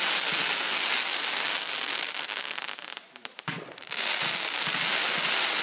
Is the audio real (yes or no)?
yes